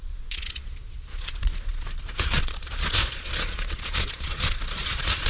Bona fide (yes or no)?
no